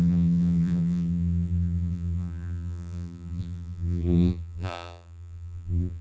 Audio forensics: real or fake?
fake